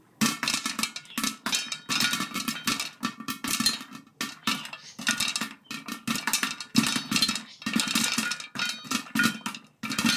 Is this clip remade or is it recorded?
recorded